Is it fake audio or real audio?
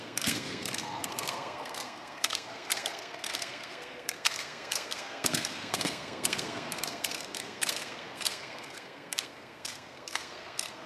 fake